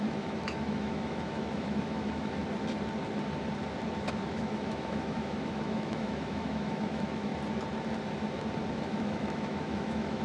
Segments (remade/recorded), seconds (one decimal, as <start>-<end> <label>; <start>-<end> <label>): 0.0-2.4 remade; 2.4-3.9 recorded; 3.9-7.3 remade; 7.3-8.7 recorded; 8.7-10.2 remade